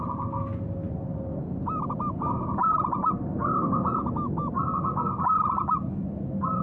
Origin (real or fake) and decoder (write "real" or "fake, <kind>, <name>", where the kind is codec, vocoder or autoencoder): real